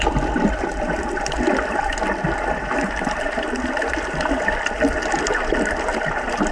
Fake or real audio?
real